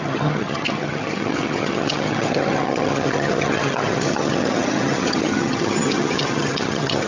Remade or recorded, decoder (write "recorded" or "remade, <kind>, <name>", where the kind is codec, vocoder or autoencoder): remade, vocoder, HiFi-GAN